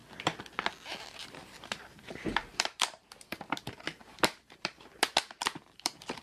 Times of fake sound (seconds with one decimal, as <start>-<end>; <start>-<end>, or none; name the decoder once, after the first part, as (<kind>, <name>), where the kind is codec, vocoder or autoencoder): 1.4-3.6 (vocoder, BigVGAN v2); 4.0-6.2

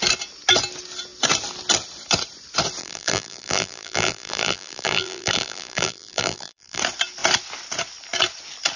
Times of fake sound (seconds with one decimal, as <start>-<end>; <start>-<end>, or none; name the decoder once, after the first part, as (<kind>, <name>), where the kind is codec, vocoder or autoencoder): 2.8-6.8 (vocoder, BigVGAN v2)